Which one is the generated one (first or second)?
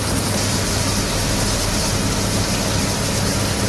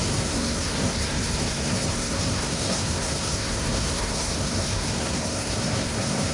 second